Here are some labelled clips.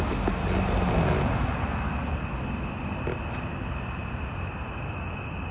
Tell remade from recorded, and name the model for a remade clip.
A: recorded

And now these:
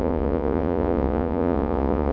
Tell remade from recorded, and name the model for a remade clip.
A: remade, vocoder, Vocos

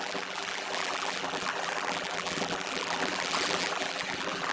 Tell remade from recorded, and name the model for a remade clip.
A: remade, vocoder, BigVGAN v2